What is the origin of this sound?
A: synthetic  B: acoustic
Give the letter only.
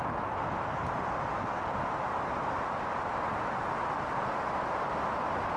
B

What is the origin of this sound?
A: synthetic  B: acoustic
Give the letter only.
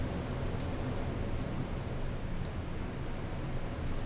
B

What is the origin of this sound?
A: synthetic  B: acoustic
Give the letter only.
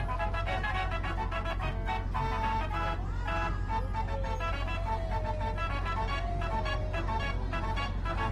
B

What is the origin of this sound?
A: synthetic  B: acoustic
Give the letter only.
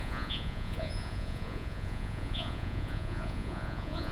A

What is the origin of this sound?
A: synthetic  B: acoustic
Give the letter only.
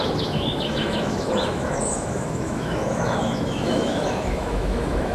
A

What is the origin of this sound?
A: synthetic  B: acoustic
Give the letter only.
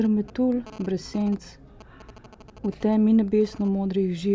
B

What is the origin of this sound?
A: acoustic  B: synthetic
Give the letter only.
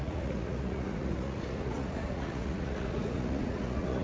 B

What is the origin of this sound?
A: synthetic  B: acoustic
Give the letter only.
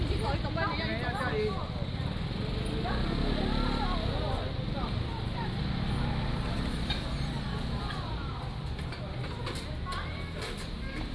B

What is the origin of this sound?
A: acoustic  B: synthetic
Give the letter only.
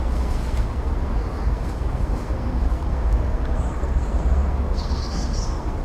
B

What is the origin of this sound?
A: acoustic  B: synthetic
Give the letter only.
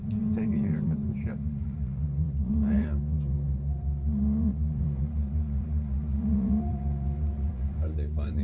B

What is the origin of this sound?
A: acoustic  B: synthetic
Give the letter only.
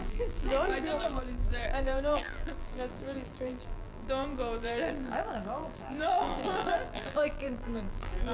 B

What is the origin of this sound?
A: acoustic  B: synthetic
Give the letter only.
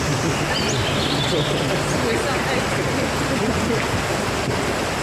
A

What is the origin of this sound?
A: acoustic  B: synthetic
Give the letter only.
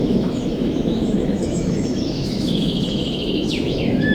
B